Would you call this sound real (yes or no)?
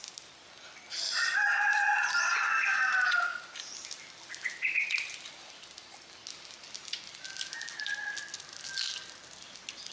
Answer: yes